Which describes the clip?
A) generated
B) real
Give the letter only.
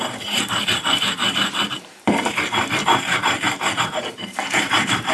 A